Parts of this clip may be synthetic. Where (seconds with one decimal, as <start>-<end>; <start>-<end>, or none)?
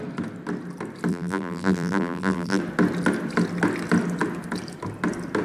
1.1-2.6